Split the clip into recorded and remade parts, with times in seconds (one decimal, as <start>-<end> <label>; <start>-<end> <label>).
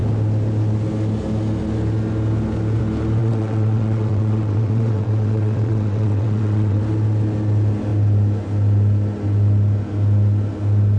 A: 0.0-3.2 recorded; 3.2-6.8 remade; 6.8-11.0 recorded